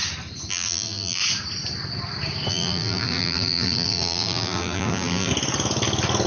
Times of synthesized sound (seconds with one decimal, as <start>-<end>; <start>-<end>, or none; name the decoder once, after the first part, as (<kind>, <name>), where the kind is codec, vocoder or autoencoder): 0.5-1.2 (vocoder, BigVGAN v2); 2.5-5.3